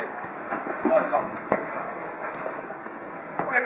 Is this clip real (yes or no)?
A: no